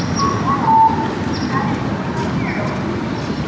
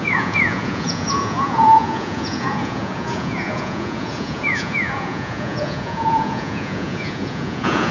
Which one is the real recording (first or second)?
first